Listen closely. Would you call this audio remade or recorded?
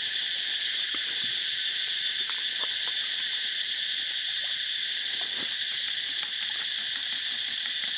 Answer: remade